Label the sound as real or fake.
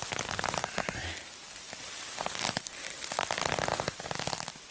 real